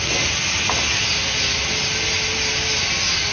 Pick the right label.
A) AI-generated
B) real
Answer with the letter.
B